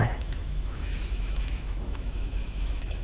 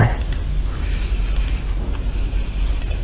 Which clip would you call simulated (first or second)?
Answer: first